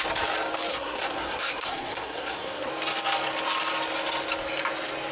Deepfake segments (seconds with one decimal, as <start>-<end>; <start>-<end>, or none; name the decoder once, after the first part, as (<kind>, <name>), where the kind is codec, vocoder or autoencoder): 0.7-2.7 (codec, SNAC)